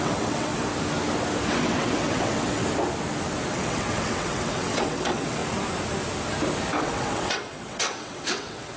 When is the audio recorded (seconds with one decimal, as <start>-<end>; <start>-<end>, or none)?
0.5-1.5; 2.6-3.5; 5.4-6.8